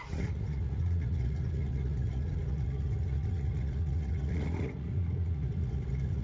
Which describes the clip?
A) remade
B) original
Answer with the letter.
A